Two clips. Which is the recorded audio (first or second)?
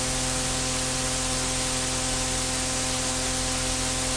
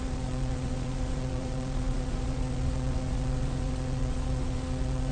first